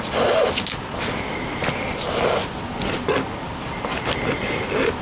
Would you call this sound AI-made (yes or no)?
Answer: no